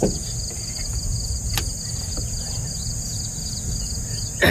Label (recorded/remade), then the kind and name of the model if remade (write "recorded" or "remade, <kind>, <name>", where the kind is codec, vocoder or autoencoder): recorded